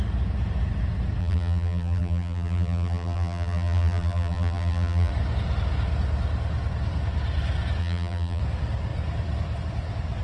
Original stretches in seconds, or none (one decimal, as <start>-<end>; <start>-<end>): 0.0-1.2; 5.1-7.8; 8.4-10.2